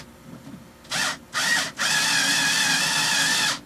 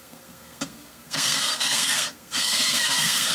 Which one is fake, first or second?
second